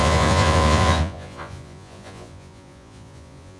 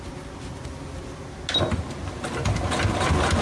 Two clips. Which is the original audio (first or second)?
second